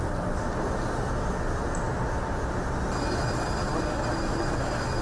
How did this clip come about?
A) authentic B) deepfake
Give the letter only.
A